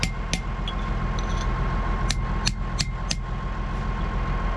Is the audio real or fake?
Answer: real